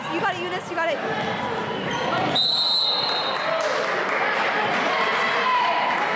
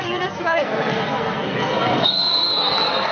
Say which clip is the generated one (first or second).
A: second